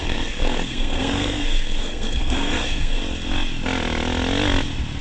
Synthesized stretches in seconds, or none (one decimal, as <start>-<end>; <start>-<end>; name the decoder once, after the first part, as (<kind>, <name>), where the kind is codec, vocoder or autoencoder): 0.0-3.0 (codec, SNAC)